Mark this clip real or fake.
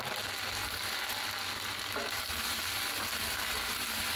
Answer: real